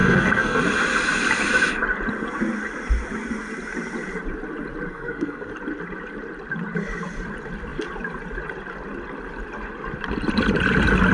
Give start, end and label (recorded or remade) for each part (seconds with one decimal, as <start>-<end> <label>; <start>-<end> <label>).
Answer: 0.0-0.6 remade; 0.6-4.9 recorded; 4.9-5.5 remade; 5.5-11.1 recorded